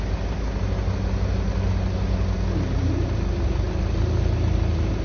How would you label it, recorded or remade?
recorded